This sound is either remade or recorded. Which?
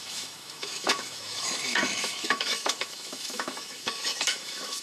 remade